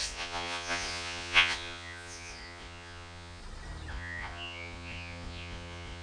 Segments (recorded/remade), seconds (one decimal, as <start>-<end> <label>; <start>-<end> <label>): 0.0-3.4 remade; 3.4-3.9 recorded; 3.9-6.0 remade